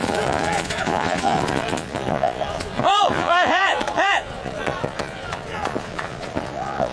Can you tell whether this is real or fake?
fake